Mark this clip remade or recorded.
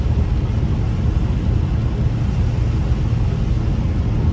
recorded